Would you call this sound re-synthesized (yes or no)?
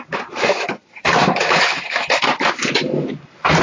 yes